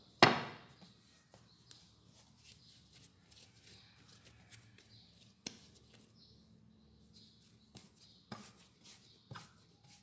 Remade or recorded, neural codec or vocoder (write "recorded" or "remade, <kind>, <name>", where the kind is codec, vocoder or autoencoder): recorded